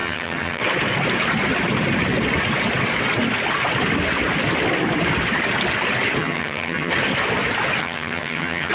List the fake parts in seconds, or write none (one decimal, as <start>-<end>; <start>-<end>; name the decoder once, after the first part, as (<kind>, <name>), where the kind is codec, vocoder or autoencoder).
0.0-0.6 (vocoder, HiFi-GAN); 6.2-6.9; 7.8-8.7